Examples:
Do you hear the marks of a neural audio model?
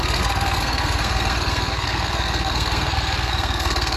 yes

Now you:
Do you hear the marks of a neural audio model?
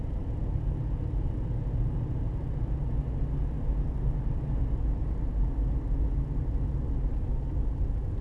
no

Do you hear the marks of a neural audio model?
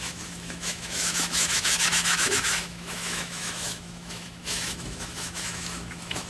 yes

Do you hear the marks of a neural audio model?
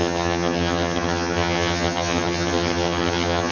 yes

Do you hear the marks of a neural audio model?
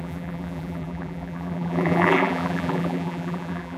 yes